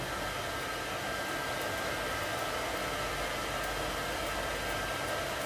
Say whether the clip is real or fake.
real